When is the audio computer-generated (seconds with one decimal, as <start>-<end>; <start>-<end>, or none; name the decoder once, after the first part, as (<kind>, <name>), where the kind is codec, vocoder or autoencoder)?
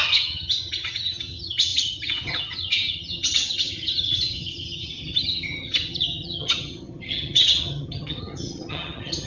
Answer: 0.0-9.3 (vocoder, HiFi-GAN)